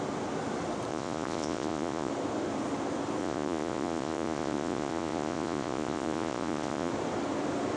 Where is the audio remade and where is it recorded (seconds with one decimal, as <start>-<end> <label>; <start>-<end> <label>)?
0.0-0.9 recorded; 0.9-2.1 remade; 2.1-3.2 recorded; 3.2-6.9 remade; 6.9-7.8 recorded